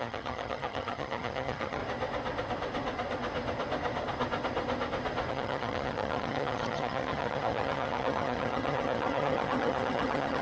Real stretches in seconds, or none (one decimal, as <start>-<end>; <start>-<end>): 1.8-5.3

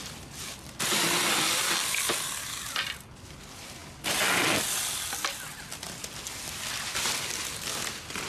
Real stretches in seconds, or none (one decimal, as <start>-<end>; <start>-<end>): 0.0-8.3

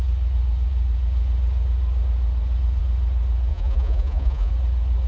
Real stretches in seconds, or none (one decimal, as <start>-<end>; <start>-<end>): 0.0-3.5; 4.5-5.1